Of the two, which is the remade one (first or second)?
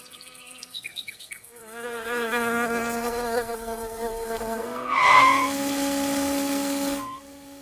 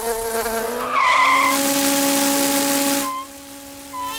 first